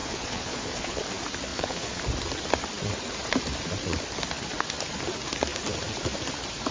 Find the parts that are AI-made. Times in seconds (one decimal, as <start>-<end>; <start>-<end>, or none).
0.0-1.0; 1.5-2.0